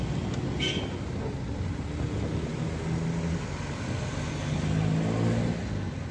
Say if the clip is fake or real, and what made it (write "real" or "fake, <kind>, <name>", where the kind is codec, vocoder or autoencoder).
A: real